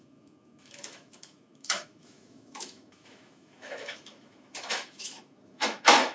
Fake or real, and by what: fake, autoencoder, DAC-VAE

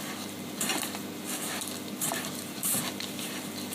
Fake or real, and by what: real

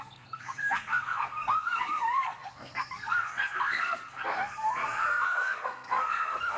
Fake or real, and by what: fake, codec, SNAC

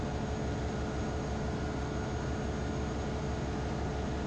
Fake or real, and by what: real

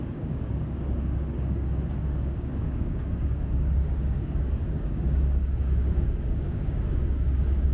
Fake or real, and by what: fake, codec, DAC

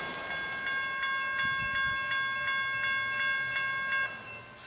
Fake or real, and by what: real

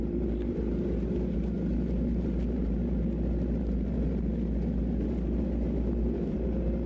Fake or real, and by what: real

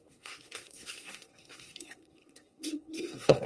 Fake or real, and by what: fake, codec, SNAC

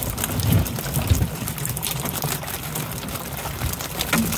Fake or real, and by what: real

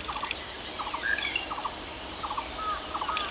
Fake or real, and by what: real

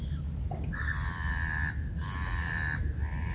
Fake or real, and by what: real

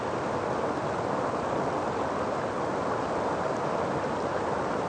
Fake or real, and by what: real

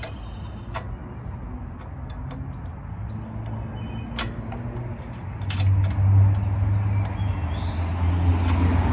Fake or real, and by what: real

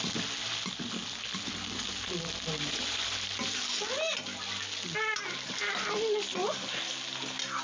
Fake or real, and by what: real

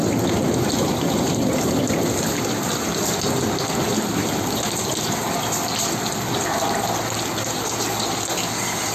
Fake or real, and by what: real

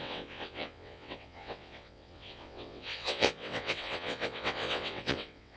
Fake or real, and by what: fake, vocoder, WaveNeXt